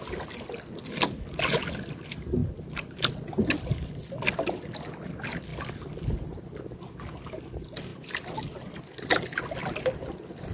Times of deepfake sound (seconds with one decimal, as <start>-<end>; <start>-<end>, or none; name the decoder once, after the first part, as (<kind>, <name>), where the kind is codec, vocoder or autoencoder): none